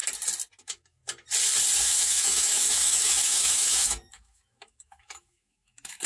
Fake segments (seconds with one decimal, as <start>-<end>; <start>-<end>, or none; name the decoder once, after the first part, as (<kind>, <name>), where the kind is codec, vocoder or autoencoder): 0.6-1.0 (autoencoder, DAC-VAE); 1.8-6.1